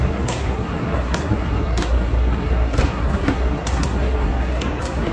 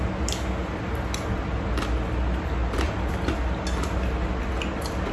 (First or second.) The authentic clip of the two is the second